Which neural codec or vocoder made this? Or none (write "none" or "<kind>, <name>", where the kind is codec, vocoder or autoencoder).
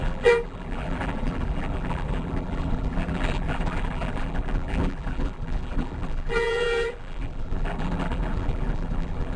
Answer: vocoder, BigVGAN v2